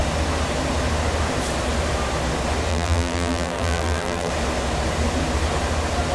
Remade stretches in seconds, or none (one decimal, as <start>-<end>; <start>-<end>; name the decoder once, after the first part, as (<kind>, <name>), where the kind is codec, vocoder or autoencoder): 2.7-4.3 (vocoder, BigVGAN v2)